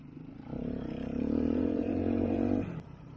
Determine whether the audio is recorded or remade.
remade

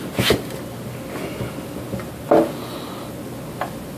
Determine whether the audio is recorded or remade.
recorded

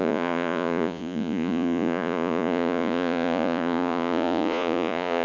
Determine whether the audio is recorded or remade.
remade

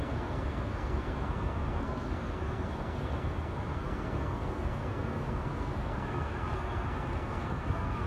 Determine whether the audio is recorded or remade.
remade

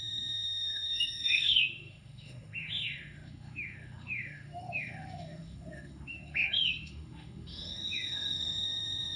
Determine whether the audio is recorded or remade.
remade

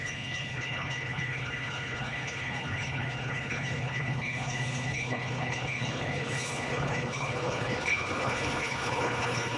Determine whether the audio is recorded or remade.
remade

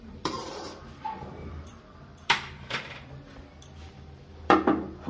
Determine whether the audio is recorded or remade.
remade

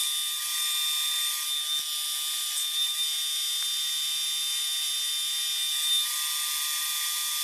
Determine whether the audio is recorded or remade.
recorded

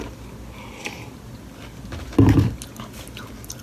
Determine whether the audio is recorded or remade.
recorded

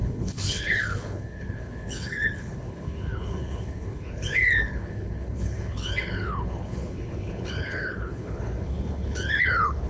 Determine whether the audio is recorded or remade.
remade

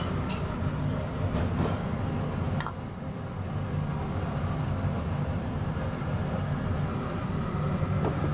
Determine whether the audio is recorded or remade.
recorded